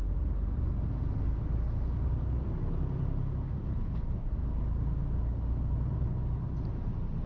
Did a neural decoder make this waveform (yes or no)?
no